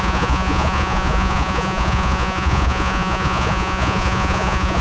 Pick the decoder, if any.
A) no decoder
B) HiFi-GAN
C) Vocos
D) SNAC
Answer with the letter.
C